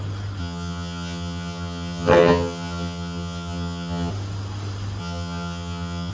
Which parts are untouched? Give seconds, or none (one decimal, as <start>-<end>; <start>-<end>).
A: 0.0-0.4; 4.1-5.0